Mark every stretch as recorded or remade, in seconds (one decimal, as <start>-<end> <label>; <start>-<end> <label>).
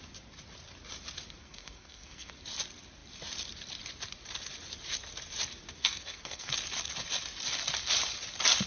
0.0-1.4 recorded; 1.4-2.3 remade; 2.3-5.8 recorded; 5.8-6.5 remade; 6.5-8.7 recorded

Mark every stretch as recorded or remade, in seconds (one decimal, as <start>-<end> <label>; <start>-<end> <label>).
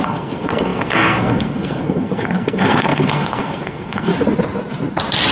0.0-4.1 remade; 4.1-5.3 recorded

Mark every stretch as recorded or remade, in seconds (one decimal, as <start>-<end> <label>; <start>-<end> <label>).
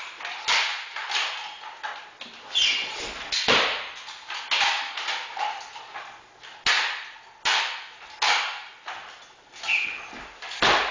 0.0-10.9 recorded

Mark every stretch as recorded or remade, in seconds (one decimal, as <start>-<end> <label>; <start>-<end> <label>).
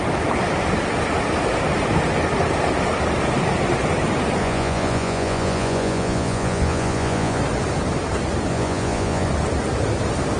0.0-4.4 recorded; 4.4-7.4 remade; 7.4-8.5 recorded; 8.5-9.3 remade; 9.3-10.4 recorded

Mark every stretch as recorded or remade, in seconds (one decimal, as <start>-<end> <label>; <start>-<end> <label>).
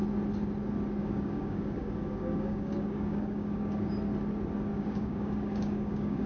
0.0-1.0 recorded; 1.0-3.9 remade; 3.9-4.7 recorded; 4.7-6.3 remade